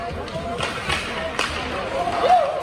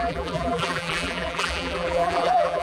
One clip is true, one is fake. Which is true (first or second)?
first